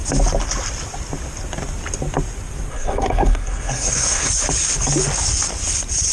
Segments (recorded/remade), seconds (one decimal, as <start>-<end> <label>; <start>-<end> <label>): 0.0-2.7 recorded; 2.7-4.3 remade; 4.3-6.1 recorded